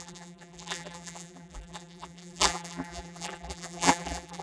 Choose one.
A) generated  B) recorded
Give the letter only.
A